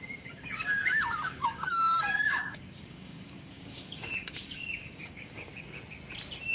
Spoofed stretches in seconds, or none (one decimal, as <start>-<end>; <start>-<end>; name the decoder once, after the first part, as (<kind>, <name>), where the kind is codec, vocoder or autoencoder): 0.0-5.5 (codec, DAC)